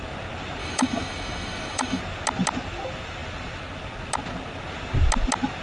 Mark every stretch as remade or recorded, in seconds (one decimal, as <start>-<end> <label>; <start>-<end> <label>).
0.0-0.6 recorded; 0.6-2.0 remade; 2.0-5.6 recorded